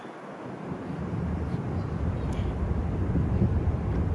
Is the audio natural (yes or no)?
yes